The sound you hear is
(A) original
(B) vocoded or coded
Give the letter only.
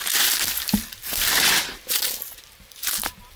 A